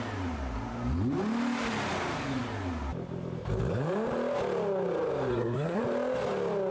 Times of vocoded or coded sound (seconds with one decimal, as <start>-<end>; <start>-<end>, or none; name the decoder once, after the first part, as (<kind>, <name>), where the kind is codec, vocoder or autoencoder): 5.3-5.8 (codec, SNAC)